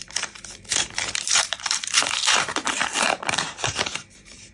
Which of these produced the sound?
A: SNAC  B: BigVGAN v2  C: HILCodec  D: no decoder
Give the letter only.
B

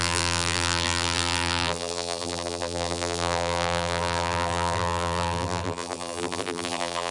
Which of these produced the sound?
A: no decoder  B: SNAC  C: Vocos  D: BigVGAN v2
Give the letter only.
D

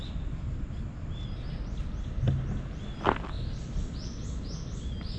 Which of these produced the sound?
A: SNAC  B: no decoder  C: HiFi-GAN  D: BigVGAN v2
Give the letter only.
B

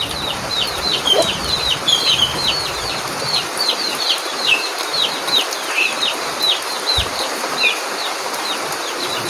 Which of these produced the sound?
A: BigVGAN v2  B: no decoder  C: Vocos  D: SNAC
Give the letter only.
A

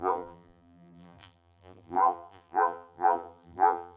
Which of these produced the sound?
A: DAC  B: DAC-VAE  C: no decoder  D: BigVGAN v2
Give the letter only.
D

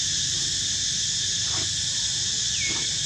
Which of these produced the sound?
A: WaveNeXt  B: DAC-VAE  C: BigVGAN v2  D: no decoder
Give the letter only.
D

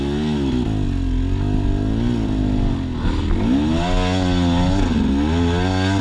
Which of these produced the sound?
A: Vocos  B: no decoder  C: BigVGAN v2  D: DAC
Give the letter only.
B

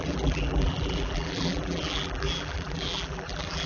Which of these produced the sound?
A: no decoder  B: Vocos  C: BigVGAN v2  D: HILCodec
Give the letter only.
C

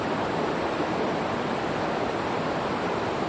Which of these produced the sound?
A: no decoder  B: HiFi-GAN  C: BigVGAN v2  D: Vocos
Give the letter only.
A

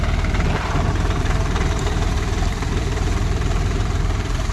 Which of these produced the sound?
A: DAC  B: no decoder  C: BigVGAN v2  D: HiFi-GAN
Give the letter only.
C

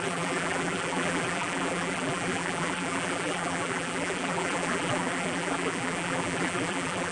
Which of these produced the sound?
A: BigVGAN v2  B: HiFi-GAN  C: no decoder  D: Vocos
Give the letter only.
A